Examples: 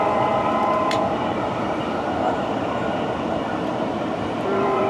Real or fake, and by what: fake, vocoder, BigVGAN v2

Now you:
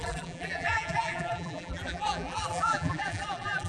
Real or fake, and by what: fake, vocoder, BigVGAN v2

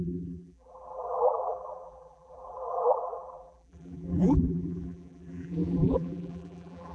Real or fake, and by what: fake, vocoder, BigVGAN v2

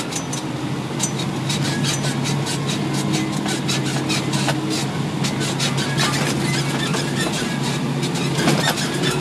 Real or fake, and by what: real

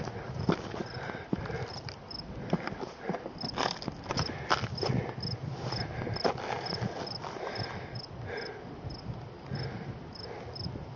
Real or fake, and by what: real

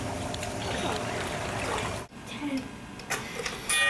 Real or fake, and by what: real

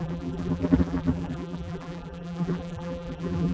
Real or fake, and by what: fake, vocoder, BigVGAN v2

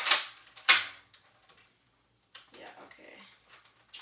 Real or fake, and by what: fake, vocoder, BigVGAN v2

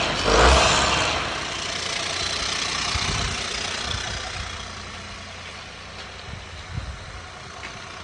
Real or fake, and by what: real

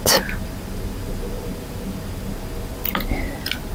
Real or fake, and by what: real